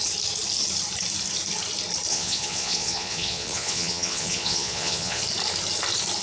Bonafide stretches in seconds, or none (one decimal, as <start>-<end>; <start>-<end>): 0.0-2.1; 5.2-6.2